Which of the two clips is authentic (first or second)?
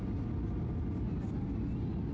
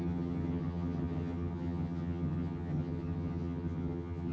first